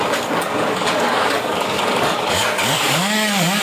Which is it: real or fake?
fake